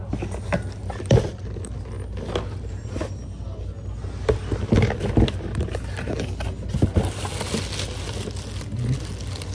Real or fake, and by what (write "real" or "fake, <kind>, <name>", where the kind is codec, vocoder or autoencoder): real